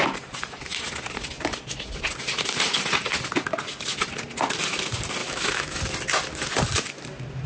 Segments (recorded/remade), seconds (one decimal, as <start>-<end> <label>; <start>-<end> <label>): 0.0-5.2 recorded; 5.2-5.8 remade; 5.8-7.5 recorded